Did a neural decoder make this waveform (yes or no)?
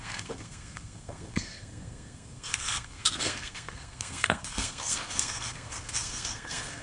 yes